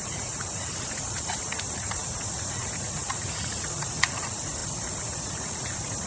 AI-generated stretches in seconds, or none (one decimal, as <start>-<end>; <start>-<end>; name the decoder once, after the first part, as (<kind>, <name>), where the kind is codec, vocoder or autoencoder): 0.0-6.1 (vocoder, Vocos)